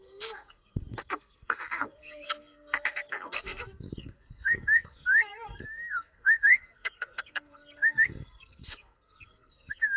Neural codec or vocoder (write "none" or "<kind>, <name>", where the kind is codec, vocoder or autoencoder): codec, SNAC